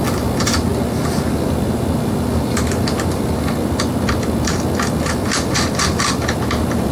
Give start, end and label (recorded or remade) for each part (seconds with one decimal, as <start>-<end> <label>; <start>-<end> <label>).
0.0-6.9 recorded